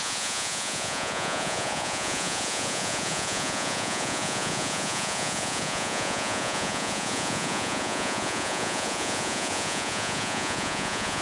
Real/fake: fake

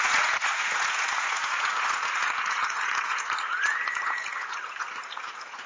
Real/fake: fake